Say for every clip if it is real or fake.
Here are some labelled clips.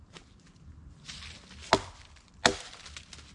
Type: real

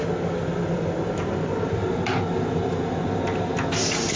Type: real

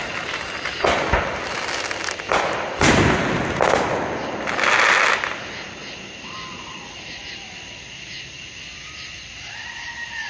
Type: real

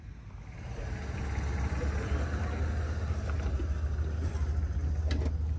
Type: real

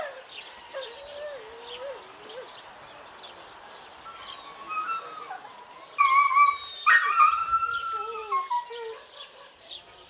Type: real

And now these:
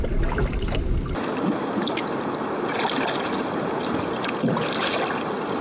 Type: real